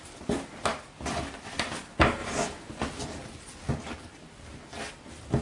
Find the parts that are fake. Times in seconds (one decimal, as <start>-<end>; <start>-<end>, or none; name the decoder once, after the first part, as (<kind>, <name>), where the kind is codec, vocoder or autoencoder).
none